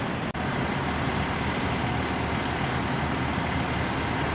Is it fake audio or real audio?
real